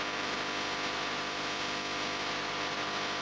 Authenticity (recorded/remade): recorded